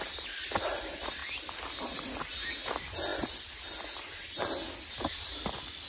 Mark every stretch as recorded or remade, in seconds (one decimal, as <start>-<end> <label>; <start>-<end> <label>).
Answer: 0.0-5.9 recorded